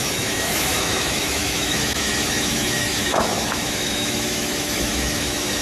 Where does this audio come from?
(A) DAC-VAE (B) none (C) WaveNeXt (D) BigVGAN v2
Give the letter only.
A